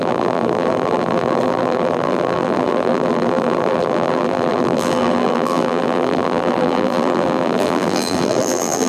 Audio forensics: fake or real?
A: fake